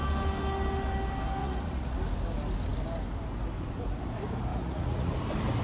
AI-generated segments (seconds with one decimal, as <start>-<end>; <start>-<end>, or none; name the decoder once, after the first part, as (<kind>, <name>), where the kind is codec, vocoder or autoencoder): 1.4-2.0 (vocoder, Vocos); 4.5-5.1